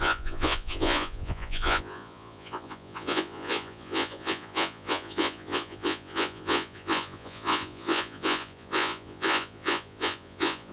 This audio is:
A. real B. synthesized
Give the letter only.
B